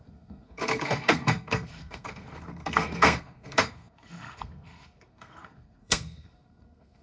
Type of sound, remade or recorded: remade